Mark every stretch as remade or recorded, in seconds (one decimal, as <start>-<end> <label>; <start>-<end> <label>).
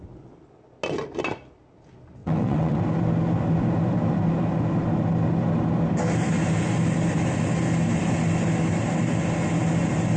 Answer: 0.0-2.2 recorded; 2.2-2.8 remade; 2.8-10.2 recorded